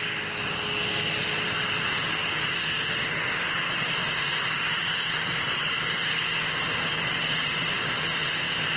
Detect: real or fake real